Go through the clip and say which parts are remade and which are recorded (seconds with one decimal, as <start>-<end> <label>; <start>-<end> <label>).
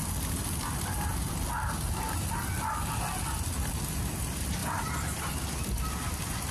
0.0-4.6 recorded; 4.6-5.3 remade; 5.3-6.5 recorded